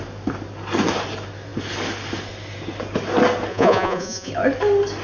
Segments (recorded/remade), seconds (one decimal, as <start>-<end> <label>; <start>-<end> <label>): 0.0-3.5 recorded; 3.5-4.3 remade; 4.3-5.0 recorded